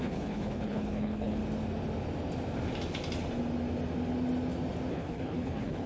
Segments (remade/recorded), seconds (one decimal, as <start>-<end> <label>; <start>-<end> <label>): 0.0-1.4 remade; 1.4-4.9 recorded; 4.9-5.9 remade